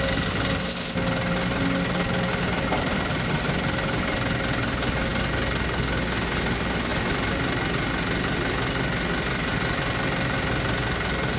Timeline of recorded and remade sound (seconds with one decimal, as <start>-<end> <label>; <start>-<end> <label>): 0.0-11.4 recorded